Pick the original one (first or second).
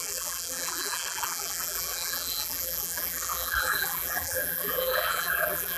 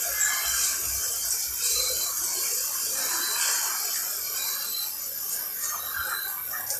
second